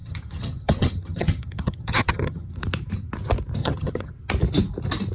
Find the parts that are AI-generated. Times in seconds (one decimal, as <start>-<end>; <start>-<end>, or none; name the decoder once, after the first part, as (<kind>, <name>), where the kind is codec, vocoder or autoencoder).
0.0-2.5 (vocoder, HiFi-GAN); 3.6-4.1